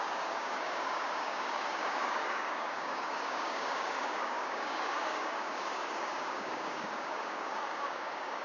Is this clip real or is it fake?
fake